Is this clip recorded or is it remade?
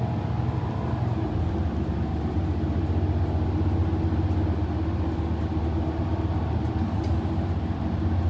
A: recorded